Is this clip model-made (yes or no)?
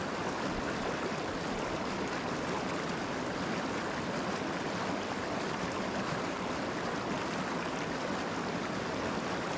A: no